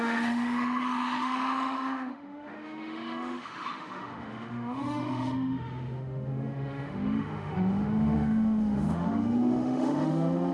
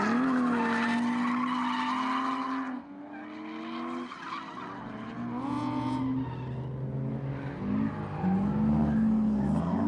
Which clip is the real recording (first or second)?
second